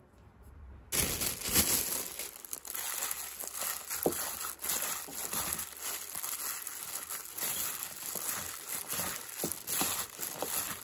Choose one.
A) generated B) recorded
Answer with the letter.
B